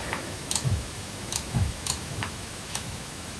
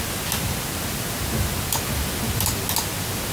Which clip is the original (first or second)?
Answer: second